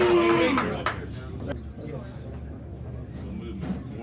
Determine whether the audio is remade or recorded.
recorded